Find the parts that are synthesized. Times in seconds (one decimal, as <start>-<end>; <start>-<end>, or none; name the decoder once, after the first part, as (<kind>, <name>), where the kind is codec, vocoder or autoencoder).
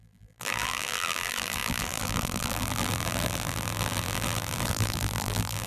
0.0-5.7 (vocoder, BigVGAN v2)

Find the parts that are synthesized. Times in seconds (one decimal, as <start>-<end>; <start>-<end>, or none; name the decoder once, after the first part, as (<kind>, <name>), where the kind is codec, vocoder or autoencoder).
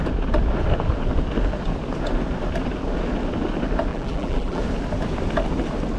3.9-4.6 (vocoder, BigVGAN v2)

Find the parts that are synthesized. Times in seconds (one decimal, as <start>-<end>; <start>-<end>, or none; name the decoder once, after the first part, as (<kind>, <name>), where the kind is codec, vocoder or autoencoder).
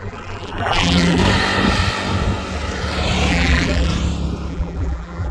0.0-1.2 (vocoder, BigVGAN v2); 3.3-3.9; 4.5-5.3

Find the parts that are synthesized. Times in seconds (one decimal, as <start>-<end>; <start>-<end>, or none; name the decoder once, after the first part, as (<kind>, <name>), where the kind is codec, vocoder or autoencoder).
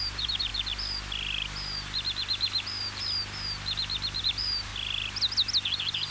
0.0-0.5 (vocoder, BigVGAN v2); 4.2-4.7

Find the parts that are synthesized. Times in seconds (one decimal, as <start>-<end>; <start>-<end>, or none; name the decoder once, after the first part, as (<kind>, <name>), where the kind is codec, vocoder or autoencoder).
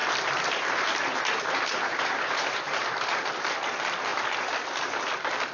0.0-3.3 (vocoder, BigVGAN v2)